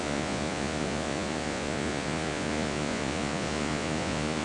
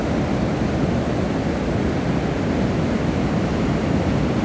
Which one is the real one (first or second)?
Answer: second